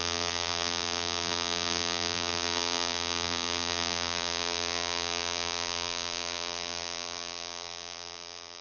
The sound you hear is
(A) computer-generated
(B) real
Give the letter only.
A